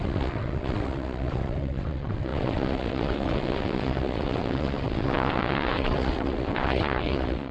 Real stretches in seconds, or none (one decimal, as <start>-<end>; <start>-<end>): none